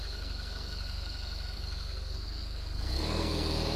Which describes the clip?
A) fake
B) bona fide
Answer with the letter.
A